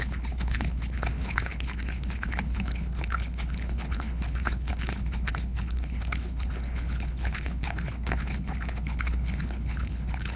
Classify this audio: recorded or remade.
remade